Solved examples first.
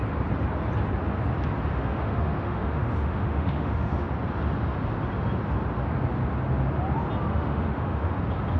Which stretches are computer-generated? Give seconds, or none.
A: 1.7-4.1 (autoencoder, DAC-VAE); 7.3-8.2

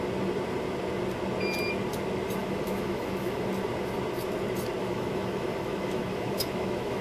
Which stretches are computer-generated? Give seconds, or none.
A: 2.4-3.5 (autoencoder, DAC-VAE); 4.8-7.0

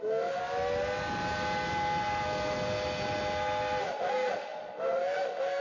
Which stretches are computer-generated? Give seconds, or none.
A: 0.0-0.4 (autoencoder, DAC-VAE); 3.8-5.6